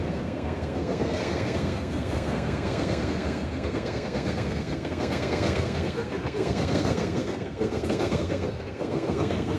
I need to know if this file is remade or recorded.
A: remade